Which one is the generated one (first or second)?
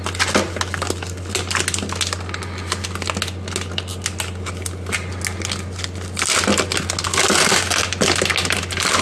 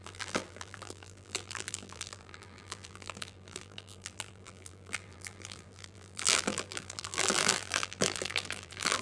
second